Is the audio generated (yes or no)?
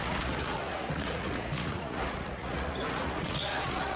yes